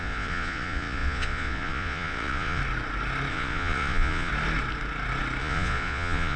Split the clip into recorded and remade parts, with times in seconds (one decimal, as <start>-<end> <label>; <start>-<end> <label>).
0.0-2.6 remade; 2.6-3.3 recorded; 3.3-4.3 remade; 4.3-5.4 recorded; 5.4-6.4 remade